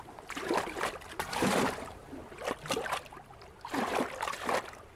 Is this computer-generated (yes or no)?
no